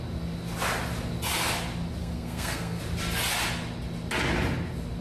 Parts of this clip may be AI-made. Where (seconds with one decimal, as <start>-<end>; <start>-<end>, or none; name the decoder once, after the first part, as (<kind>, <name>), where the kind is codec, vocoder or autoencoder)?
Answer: 2.0-2.8 (codec, SNAC)